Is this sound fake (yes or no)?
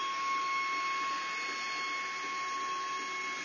no